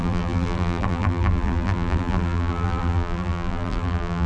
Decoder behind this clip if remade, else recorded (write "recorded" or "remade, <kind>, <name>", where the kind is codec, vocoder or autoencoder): remade, vocoder, BigVGAN v2